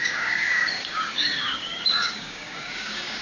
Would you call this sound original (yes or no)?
no